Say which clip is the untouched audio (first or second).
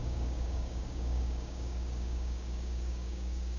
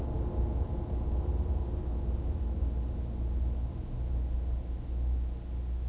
second